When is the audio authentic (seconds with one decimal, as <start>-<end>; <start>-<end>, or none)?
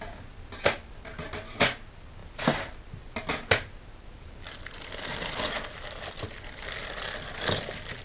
0.0-8.0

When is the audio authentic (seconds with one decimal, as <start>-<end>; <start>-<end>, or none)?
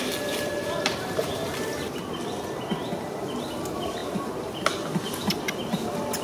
0.0-6.2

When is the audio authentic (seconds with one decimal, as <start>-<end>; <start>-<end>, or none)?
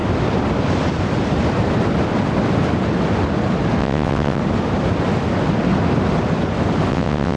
0.0-3.8; 4.4-6.9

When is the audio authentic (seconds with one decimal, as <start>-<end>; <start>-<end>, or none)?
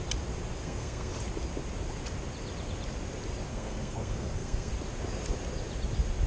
0.0-0.6; 1.1-3.5; 4.7-6.3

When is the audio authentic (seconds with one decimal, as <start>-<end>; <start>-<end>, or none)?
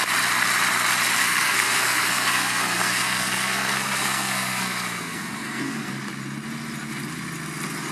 0.0-1.2; 5.9-7.9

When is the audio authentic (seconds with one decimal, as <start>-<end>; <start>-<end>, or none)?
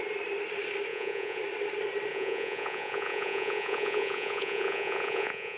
0.0-0.9; 1.4-2.1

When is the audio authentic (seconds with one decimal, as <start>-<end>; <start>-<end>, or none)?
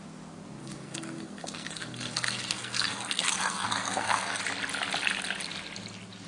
0.0-0.6; 4.4-6.3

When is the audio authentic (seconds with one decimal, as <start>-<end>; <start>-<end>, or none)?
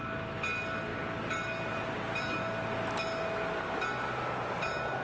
0.0-5.0